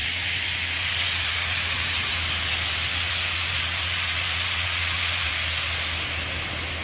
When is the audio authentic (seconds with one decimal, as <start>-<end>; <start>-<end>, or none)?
2.2-2.9; 5.3-6.8

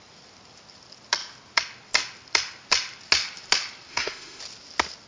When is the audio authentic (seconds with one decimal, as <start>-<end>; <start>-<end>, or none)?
0.0-3.9; 4.4-5.1